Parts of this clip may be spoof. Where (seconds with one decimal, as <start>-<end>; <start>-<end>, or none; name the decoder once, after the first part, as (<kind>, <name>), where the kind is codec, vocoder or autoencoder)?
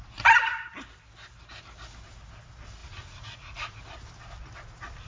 2.8-3.8 (vocoder, Vocos)